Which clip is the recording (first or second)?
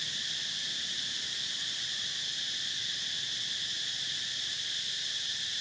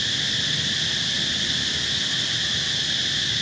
second